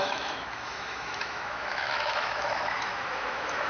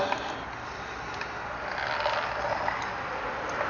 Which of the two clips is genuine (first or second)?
second